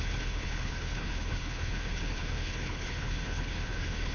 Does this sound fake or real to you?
fake